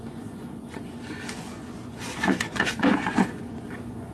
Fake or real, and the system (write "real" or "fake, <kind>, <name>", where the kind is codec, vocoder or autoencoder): fake, vocoder, Vocos